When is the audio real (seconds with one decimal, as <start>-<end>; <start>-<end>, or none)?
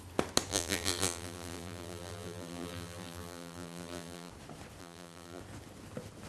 0.0-0.5; 4.3-4.8; 5.4-6.3